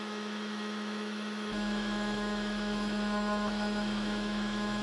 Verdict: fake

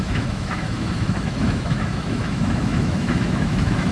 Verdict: fake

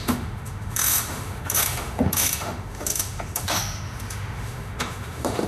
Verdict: fake